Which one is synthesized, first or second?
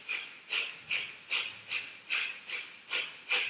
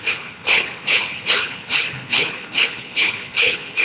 second